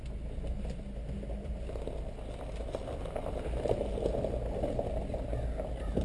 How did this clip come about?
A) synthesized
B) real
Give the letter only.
B